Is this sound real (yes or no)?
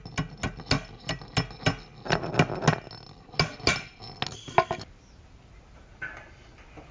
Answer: yes